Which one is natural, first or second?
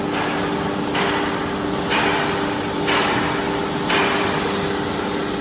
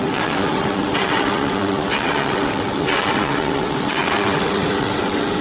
first